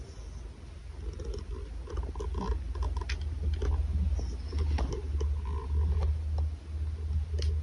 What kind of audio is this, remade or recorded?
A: recorded